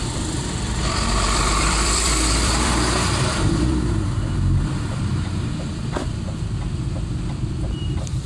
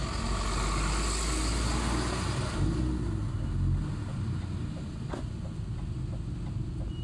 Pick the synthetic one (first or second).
first